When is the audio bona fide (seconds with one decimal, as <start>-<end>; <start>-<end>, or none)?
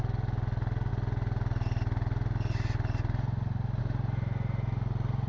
0.0-5.3